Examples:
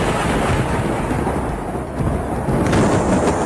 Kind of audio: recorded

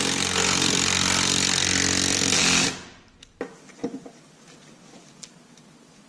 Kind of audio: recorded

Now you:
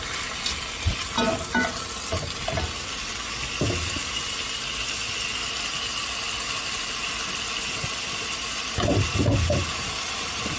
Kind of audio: recorded